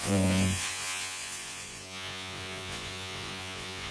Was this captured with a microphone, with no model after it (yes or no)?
no